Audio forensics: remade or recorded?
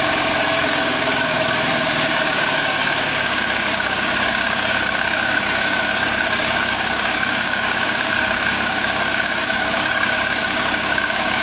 remade